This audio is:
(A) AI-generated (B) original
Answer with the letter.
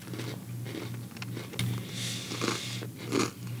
B